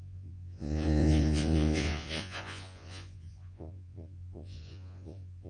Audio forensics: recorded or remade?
remade